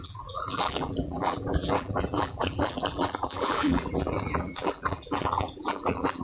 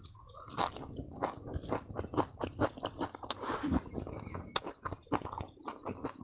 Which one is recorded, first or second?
second